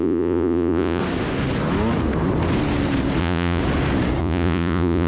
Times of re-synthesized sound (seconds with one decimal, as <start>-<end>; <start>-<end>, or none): 0.0-1.0; 3.2-3.6; 4.2-5.1